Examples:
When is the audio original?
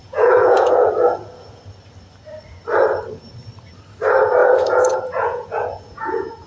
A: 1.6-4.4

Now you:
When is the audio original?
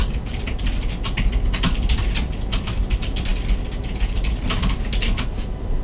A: 0.0-5.8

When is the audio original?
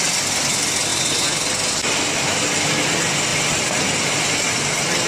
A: 0.0-5.1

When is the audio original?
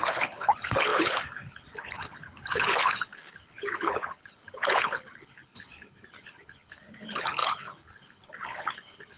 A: none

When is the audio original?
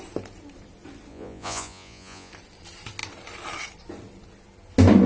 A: 0.0-1.1; 2.3-5.1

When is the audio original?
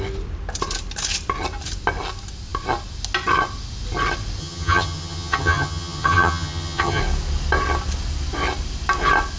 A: 0.0-4.4; 7.0-9.4